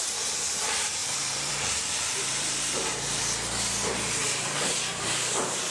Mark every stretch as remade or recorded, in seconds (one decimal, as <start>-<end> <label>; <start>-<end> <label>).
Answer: 0.0-5.7 remade